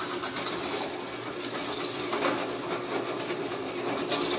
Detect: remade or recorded recorded